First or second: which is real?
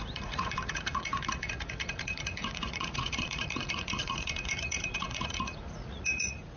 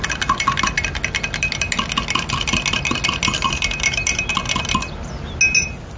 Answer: second